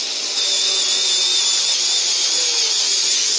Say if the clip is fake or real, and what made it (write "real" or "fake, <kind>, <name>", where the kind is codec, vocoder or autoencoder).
real